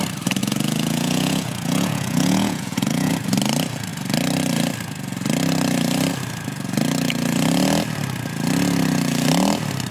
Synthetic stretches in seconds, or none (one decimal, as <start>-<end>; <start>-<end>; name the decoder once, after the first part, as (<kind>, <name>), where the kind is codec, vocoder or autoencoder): 0.4-3.1 (vocoder, Vocos)